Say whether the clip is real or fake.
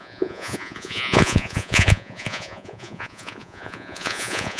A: fake